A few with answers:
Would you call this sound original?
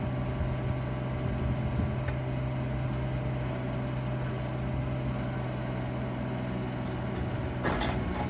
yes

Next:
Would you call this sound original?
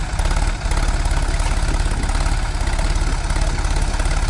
yes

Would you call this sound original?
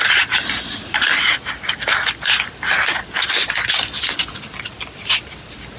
yes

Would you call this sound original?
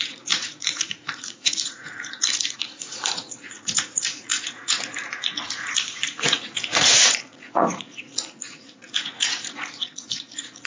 no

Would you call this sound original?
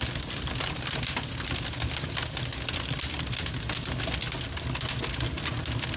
yes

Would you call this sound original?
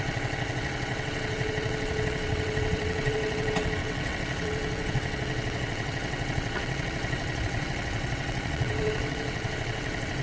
no